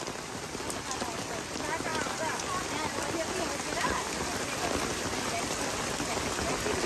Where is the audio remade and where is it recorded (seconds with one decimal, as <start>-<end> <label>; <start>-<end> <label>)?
0.0-6.9 recorded